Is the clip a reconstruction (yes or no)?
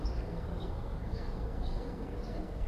yes